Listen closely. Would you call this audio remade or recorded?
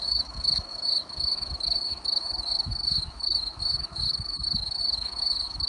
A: remade